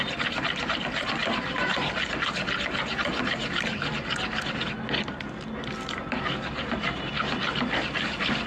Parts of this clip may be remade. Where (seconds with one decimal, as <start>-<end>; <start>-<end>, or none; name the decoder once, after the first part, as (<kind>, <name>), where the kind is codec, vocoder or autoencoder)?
1.2-1.7 (vocoder, BigVGAN v2)